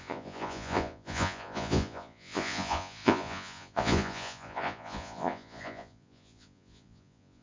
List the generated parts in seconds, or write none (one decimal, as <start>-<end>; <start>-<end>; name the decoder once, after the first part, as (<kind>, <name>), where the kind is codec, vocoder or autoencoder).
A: 0.0-7.4 (vocoder, Vocos)